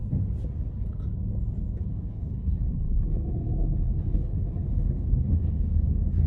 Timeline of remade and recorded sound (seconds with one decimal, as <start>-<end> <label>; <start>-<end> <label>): 0.0-1.9 recorded; 1.9-6.3 remade

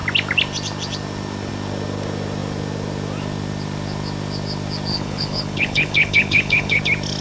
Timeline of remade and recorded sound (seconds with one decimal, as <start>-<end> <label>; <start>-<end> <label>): 0.0-4.9 recorded; 4.9-6.8 remade; 6.8-7.2 recorded